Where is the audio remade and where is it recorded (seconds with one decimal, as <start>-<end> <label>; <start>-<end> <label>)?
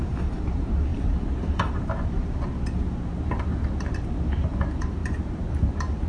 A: 0.0-6.1 remade